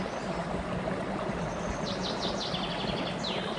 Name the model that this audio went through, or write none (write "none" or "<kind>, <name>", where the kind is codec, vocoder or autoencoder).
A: none